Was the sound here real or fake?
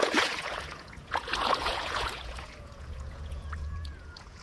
fake